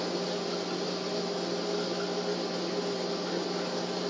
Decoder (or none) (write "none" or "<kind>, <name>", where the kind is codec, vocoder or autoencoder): none